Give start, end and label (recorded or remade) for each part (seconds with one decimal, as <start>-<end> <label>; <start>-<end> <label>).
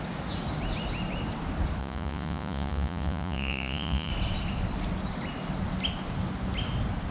0.0-1.8 recorded; 1.8-4.1 remade; 4.1-7.1 recorded